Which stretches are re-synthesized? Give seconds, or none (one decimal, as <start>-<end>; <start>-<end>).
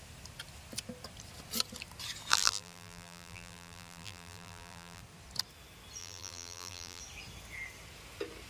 2.3-5.0; 6.0-7.0